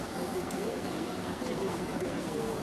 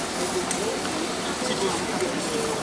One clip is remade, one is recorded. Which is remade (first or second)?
first